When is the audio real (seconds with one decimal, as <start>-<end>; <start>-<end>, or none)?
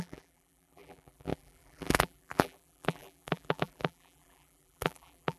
none